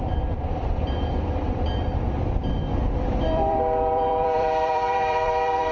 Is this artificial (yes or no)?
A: yes